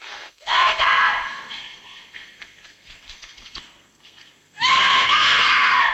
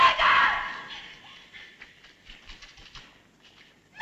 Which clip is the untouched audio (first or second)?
second